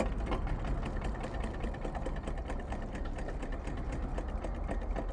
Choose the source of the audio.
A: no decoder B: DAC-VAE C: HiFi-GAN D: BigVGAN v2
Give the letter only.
A